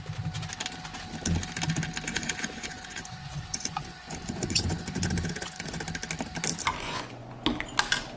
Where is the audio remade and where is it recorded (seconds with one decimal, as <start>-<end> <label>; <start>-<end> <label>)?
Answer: 0.0-2.1 recorded; 2.1-5.8 remade; 5.8-6.7 recorded; 6.7-7.3 remade; 7.3-8.2 recorded